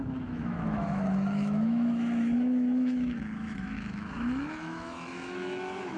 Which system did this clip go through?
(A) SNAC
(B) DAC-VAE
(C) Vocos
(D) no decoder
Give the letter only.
B